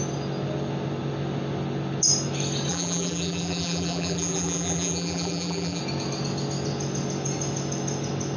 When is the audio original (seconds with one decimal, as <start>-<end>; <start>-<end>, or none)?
0.0-2.7; 5.8-8.4